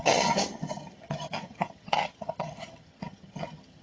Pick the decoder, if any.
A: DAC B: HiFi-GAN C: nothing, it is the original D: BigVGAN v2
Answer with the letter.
B